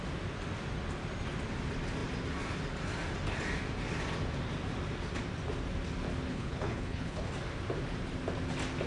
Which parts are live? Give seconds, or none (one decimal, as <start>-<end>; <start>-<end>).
0.0-6.3; 7.3-8.9